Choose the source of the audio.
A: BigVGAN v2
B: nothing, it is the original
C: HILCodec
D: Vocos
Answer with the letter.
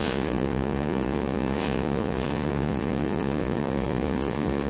D